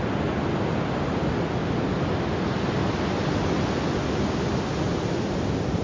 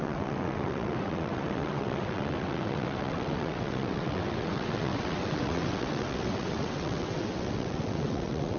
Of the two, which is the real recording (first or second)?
first